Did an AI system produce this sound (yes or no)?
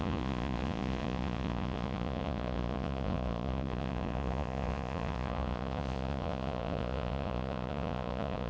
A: yes